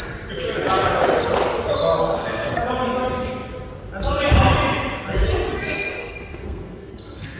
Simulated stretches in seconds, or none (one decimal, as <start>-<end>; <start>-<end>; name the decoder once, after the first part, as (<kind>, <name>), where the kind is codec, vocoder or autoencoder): 2.0-2.6 (codec, SNAC); 5.6-7.4